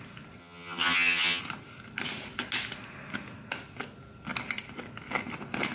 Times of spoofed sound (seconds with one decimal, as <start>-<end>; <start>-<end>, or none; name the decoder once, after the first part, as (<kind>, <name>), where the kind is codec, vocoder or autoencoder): 0.4-1.4 (vocoder, HiFi-GAN)